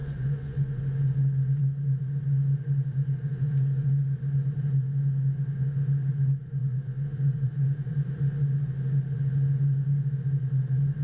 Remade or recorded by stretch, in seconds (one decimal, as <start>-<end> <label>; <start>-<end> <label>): 0.0-0.8 remade; 0.8-6.6 recorded; 6.6-7.9 remade; 7.9-11.0 recorded